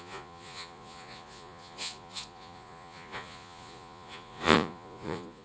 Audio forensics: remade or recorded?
remade